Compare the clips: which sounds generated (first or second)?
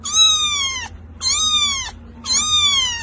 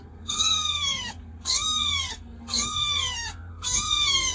second